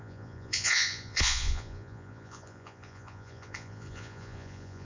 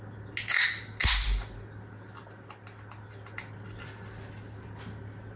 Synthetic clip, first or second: first